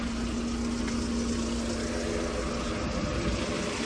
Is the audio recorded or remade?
recorded